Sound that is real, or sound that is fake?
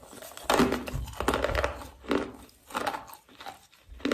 real